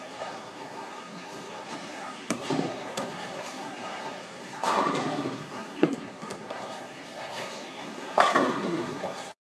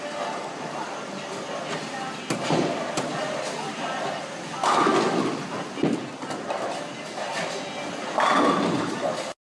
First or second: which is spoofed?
first